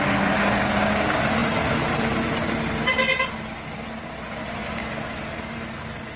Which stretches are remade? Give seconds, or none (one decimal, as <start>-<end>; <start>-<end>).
1.4-2.1